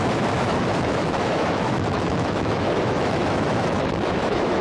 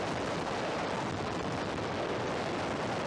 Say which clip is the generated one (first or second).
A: first